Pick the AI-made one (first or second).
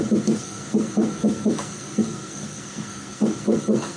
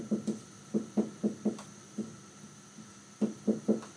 first